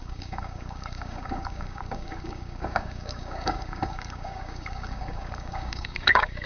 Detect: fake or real fake